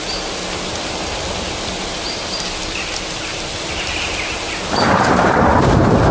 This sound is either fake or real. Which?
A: real